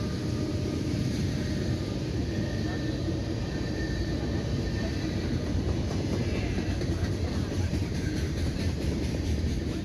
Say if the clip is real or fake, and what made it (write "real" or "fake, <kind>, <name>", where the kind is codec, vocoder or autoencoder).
fake, vocoder, BigVGAN v2